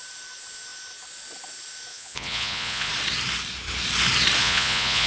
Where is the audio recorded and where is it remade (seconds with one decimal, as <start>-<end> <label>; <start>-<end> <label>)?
0.0-1.9 recorded; 1.9-2.9 remade; 2.9-4.4 recorded; 4.4-5.1 remade